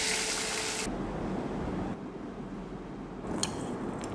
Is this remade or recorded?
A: recorded